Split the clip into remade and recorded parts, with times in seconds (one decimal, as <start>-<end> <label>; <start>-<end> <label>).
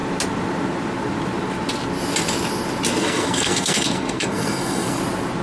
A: 0.0-3.0 recorded; 3.0-5.0 remade; 5.0-5.4 recorded